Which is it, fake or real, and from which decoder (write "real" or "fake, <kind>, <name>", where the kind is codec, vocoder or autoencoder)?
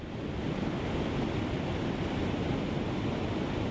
real